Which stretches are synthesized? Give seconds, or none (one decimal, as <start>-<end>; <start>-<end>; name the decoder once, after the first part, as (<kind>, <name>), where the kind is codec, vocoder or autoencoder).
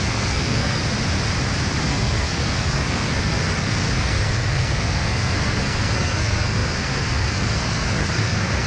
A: 0.0-0.8 (codec, SNAC); 1.8-8.7